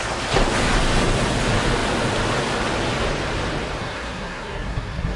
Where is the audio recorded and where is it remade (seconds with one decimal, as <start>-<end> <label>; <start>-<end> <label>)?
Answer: 0.0-3.8 recorded; 3.8-5.2 remade